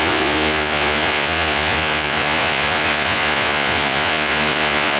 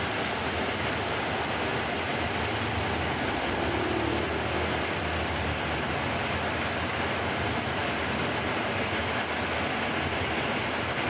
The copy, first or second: first